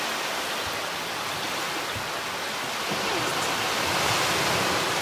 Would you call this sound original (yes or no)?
yes